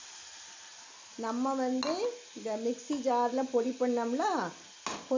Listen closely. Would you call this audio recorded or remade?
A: recorded